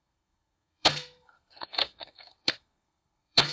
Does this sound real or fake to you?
fake